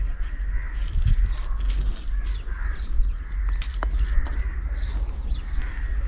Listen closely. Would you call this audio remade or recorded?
recorded